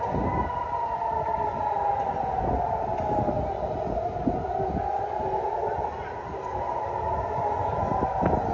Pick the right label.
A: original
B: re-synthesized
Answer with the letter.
A